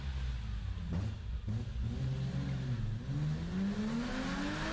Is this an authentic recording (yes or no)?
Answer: yes